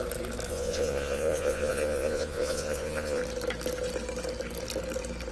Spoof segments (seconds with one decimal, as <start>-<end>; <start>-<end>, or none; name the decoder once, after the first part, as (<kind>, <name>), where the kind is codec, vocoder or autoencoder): 0.5-3.2 (vocoder, Vocos)